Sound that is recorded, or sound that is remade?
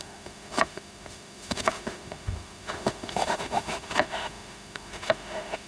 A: remade